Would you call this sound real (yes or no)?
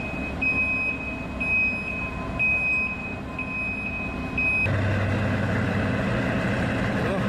yes